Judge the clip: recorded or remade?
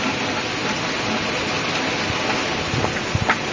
recorded